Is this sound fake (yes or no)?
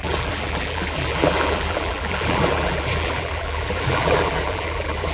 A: yes